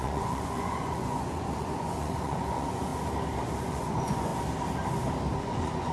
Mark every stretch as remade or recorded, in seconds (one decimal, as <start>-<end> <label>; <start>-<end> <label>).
0.0-2.9 remade; 2.9-3.6 recorded; 3.6-4.3 remade; 4.3-5.4 recorded; 5.4-5.9 remade